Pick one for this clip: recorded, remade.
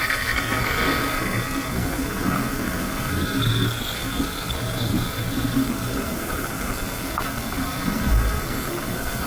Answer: remade